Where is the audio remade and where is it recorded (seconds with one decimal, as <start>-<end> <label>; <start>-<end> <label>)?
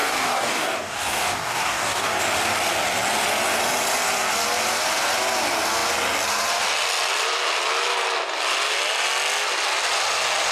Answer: 0.0-2.2 remade; 2.2-10.5 recorded